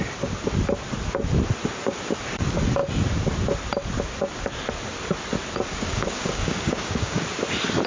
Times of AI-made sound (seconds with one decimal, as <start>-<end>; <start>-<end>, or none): 5.7-7.2